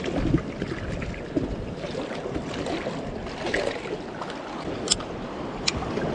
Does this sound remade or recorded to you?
recorded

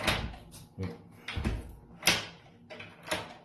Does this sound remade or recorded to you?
recorded